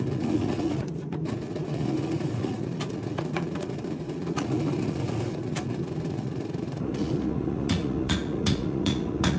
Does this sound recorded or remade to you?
remade